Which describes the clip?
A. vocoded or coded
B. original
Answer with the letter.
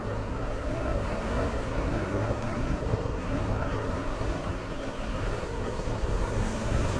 A